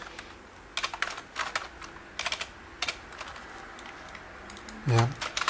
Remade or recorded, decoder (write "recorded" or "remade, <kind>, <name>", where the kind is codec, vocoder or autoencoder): recorded